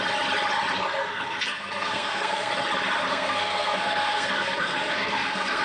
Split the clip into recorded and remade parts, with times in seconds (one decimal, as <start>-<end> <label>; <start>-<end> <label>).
0.0-1.0 recorded; 1.0-2.5 remade; 2.5-3.1 recorded; 3.1-5.6 remade